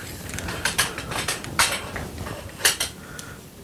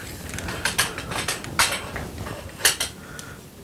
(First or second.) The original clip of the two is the second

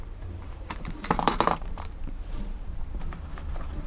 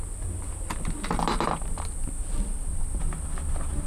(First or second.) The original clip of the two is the second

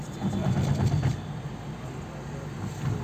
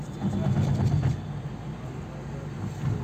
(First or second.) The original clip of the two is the second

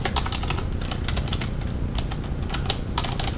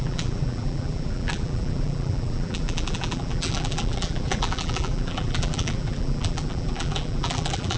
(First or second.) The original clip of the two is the first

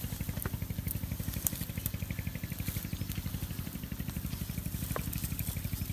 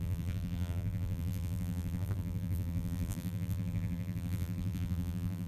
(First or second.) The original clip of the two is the first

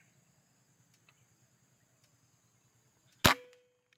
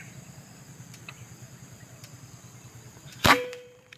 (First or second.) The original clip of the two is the first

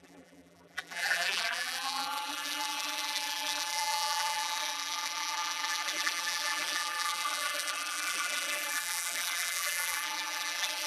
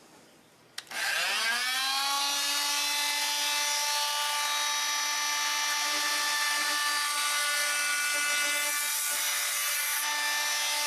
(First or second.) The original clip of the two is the second